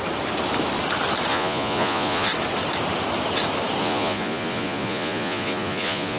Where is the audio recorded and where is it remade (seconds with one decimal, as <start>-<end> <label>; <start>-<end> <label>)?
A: 0.0-1.3 recorded; 1.3-2.3 remade; 2.3-3.8 recorded; 3.8-6.2 remade